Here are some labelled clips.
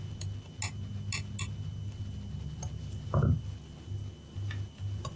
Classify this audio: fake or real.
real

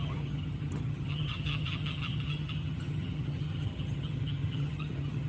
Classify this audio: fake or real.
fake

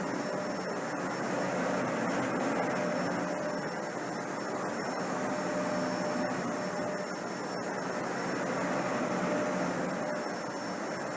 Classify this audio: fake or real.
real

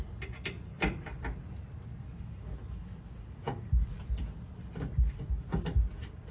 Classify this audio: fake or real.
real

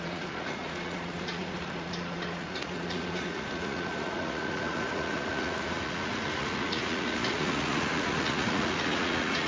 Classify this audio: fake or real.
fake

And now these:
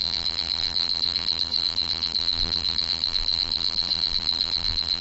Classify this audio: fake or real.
fake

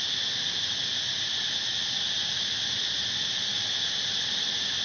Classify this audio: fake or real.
real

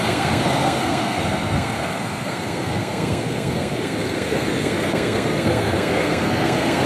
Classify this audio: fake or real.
fake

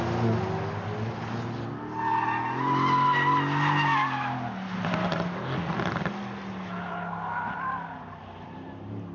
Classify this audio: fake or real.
real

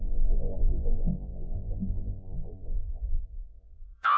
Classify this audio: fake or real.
fake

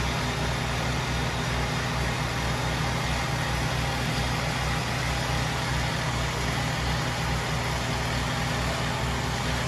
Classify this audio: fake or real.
real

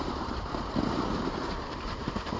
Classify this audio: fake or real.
fake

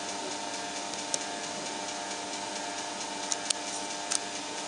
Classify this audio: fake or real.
real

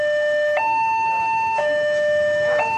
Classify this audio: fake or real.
fake